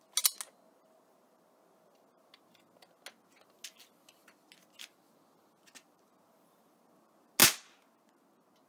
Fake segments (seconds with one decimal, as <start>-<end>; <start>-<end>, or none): none

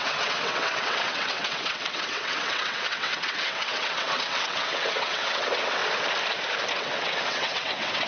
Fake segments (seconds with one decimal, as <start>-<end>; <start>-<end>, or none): 0.0-5.8; 6.7-8.1

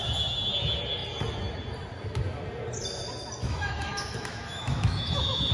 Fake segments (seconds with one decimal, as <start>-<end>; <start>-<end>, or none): 3.4-5.5

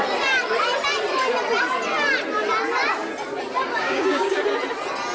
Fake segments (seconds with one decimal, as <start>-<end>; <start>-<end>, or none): 3.8-4.4

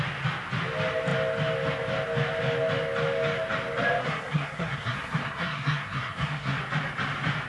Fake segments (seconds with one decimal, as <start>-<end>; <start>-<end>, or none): 4.0-6.6

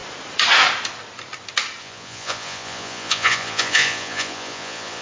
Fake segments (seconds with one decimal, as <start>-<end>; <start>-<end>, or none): 1.8-5.0

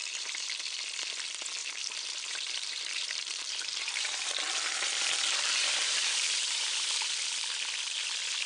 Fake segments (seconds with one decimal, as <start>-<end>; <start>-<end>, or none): 0.0-0.6; 1.6-4.3; 5.6-7.1